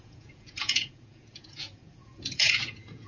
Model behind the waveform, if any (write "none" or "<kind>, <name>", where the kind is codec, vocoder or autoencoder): vocoder, Vocos